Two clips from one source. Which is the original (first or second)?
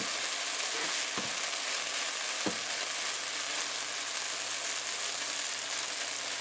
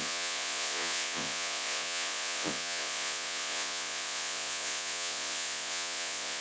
first